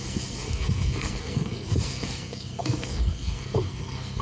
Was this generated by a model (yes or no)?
yes